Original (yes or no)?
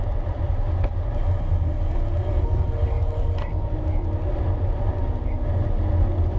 yes